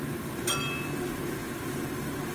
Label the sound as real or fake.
real